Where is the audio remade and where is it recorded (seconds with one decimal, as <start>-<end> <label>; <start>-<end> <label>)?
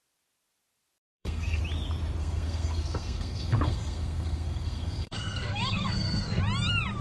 0.0-1.1 recorded; 1.1-1.6 remade; 1.6-2.2 recorded; 2.2-6.4 remade; 6.4-7.0 recorded